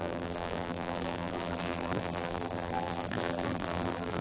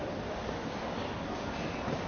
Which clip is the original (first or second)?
second